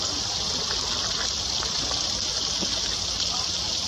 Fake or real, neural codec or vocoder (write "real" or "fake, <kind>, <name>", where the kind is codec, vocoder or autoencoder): real